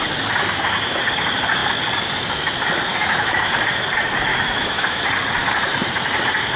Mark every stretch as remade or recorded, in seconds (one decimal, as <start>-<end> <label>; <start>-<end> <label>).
0.0-2.9 recorded; 2.9-3.5 remade; 3.5-4.3 recorded; 4.3-5.0 remade; 5.0-6.6 recorded